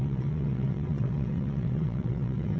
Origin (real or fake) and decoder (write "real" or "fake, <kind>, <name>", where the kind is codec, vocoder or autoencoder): fake, vocoder, WaveNeXt